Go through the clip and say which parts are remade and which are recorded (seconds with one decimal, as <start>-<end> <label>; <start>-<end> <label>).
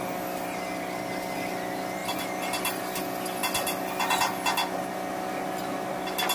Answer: 0.0-6.3 recorded